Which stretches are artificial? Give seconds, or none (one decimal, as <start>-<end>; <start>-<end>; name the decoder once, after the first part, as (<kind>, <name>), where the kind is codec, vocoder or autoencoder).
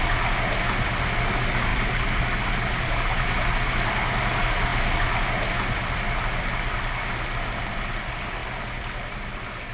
none